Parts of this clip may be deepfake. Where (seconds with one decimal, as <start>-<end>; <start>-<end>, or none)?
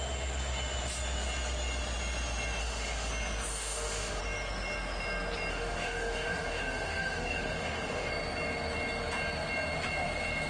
2.6-3.1; 3.5-4.2; 5.5-8.1